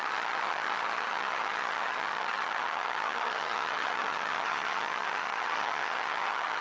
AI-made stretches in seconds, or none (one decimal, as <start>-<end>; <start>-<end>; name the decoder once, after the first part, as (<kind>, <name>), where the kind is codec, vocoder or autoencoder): 0.0-6.6 (vocoder, HiFi-GAN)